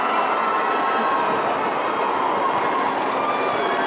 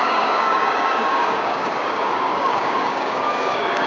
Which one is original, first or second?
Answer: first